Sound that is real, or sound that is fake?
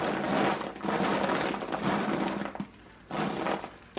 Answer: real